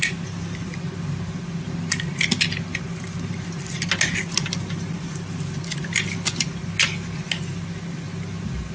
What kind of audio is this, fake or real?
real